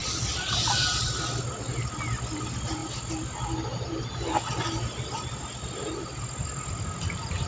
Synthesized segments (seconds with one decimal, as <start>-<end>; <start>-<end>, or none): 0.0-0.7; 2.8-4.0